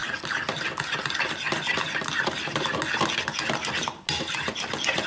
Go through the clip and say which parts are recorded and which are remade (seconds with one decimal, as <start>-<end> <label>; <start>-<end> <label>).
0.0-5.1 recorded